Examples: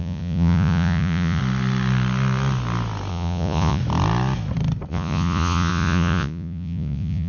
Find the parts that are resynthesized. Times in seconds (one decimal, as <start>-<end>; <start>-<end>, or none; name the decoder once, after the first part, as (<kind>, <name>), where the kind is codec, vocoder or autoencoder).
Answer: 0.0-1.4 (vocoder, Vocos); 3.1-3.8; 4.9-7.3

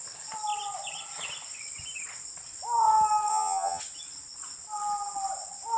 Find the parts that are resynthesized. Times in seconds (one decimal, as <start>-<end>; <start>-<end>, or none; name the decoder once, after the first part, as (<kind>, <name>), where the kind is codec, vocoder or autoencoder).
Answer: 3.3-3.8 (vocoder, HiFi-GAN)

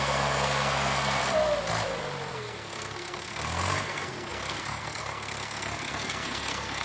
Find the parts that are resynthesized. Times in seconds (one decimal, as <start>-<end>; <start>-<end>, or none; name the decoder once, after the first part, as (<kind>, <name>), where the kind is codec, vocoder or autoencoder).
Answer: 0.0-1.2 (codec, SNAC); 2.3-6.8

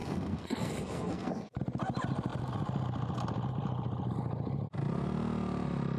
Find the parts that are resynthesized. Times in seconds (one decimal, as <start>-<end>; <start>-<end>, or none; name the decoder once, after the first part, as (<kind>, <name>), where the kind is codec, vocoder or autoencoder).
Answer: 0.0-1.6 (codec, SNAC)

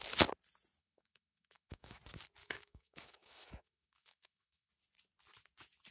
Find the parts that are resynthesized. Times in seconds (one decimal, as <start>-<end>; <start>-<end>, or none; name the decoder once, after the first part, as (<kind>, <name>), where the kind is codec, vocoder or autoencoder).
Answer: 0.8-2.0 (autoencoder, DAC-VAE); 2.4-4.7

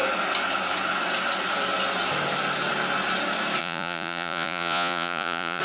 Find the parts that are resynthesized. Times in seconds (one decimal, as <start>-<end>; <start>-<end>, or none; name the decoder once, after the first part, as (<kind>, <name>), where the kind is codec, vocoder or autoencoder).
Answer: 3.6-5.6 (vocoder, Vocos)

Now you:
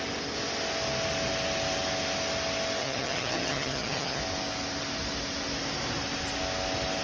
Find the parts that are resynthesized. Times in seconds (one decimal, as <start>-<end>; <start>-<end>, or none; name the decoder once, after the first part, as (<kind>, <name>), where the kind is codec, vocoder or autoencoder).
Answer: 2.8-4.2 (vocoder, HiFi-GAN)